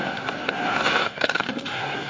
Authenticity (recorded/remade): remade